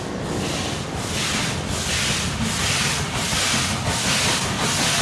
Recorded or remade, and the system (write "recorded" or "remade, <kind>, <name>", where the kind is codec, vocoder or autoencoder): recorded